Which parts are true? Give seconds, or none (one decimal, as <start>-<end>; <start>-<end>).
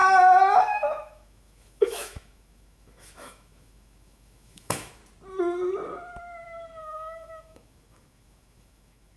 0.0-0.6; 5.0-6.8